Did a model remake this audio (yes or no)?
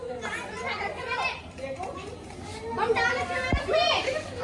no